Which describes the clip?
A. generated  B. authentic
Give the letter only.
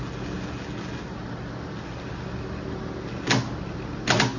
B